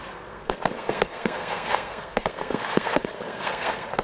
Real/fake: fake